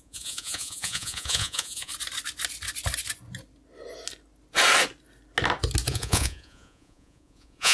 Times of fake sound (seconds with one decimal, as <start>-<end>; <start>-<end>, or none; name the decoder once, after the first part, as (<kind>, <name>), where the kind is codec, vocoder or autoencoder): 0.0-1.9 (vocoder, Vocos); 5.9-7.7